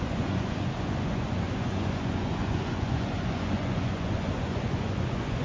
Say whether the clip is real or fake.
fake